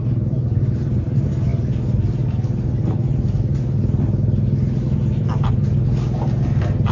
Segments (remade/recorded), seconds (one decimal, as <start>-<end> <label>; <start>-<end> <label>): 0.0-6.9 recorded